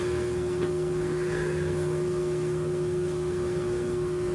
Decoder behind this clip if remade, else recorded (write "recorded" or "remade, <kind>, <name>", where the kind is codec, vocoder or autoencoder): remade, codec, SNAC